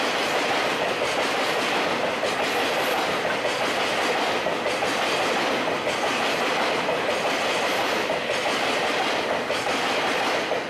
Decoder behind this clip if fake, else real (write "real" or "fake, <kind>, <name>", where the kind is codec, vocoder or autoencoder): real